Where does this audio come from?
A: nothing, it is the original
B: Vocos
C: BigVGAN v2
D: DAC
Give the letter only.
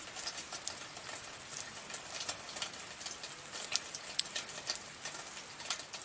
A